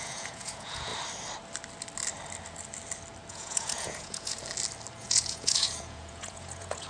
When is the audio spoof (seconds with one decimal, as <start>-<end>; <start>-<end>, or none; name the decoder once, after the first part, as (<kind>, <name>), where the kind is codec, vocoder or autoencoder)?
0.0-0.9 (vocoder, Vocos); 3.3-4.4; 5.0-6.9